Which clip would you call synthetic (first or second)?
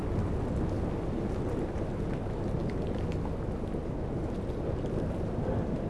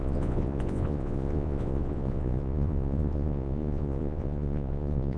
second